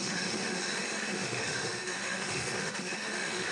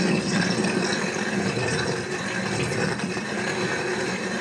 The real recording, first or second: second